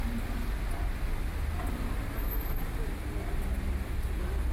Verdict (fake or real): real